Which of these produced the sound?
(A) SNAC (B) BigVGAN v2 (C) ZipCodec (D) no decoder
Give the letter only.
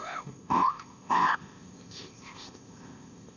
C